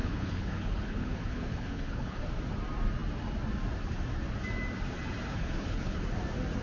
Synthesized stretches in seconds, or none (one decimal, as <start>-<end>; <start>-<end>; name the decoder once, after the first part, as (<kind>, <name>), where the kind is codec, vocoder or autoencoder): 0.0-2.2 (codec, HILCodec); 5.3-6.0